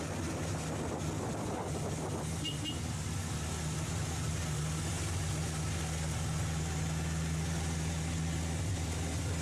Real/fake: real